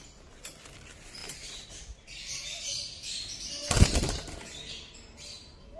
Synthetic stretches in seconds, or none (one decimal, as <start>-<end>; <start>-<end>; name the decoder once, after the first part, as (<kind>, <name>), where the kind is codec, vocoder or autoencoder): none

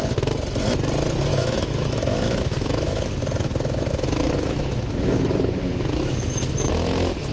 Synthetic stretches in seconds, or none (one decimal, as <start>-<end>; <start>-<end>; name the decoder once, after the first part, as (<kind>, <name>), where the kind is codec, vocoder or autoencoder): 1.3-5.6 (autoencoder, DAC-VAE); 6.1-7.3

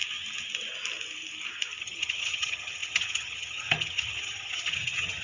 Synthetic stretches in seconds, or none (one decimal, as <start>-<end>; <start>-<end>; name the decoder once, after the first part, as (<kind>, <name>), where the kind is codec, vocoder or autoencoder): 1.8-5.2 (vocoder, HiFi-GAN)